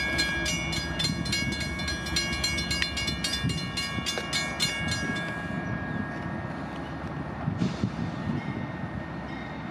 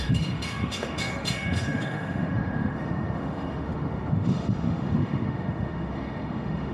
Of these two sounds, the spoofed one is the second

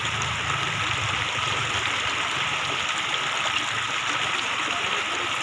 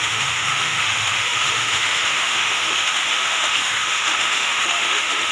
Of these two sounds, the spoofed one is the second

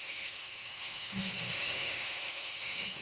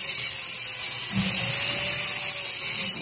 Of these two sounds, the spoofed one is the first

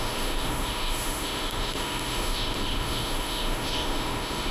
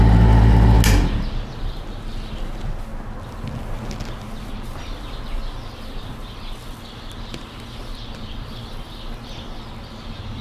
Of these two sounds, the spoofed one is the first